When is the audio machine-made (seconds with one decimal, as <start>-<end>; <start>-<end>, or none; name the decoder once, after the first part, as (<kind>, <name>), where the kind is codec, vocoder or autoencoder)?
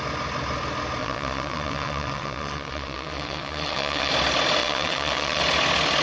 1.0-4.1 (vocoder, WaveNeXt); 4.6-5.4